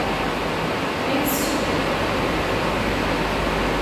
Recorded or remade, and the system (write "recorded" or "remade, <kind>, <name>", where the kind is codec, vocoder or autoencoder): recorded